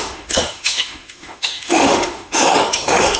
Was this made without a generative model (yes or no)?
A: no